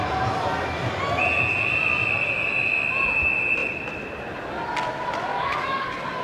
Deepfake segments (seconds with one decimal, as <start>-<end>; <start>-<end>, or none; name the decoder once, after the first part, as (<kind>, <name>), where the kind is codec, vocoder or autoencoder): 5.3-6.2 (codec, DAC)